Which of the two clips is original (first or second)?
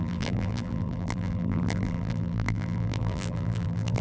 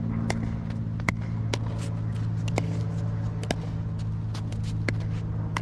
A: second